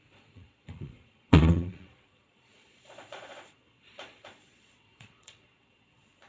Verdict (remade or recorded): remade